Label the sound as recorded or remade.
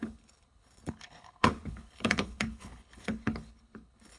remade